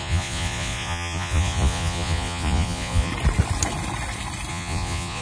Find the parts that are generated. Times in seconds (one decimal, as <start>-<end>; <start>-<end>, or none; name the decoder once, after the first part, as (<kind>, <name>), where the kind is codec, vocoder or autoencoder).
0.0-3.1 (vocoder, Vocos); 4.5-5.2